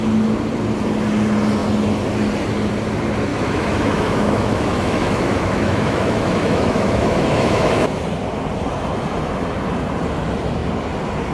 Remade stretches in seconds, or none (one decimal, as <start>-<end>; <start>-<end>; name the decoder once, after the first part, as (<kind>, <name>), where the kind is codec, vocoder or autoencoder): 3.3-8.0 (autoencoder, DAC-VAE)